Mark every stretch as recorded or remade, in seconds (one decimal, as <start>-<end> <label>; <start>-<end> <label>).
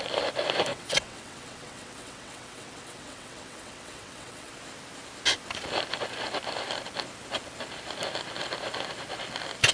0.0-0.7 recorded; 0.7-4.5 remade; 4.5-9.7 recorded